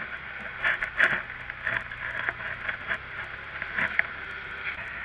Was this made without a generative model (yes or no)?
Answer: yes